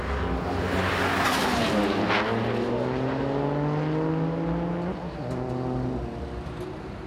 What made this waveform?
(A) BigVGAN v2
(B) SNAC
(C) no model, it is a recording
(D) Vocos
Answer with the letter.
C